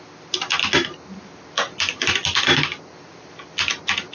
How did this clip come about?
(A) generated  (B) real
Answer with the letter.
B